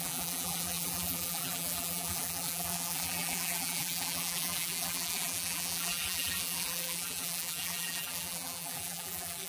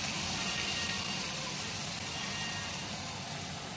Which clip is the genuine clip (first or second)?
second